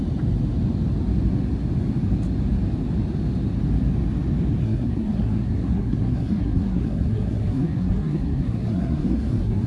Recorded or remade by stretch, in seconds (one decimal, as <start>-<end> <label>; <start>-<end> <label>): 0.0-4.6 recorded; 4.6-9.7 remade